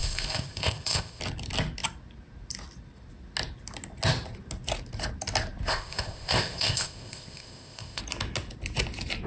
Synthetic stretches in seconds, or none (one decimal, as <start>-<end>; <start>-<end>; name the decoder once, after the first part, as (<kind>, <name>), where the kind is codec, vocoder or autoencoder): 0.0-1.2 (codec, ZipCodec); 5.7-8.0